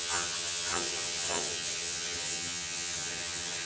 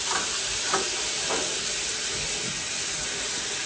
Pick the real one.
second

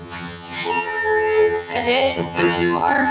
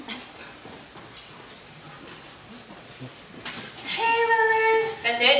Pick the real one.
second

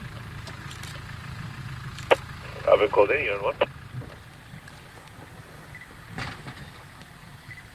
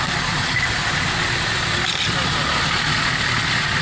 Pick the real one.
second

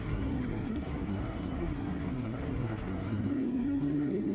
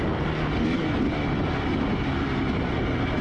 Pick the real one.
second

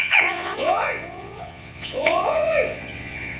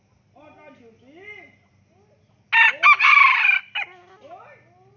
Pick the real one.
second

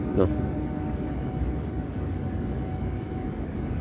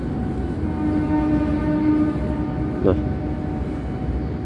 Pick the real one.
second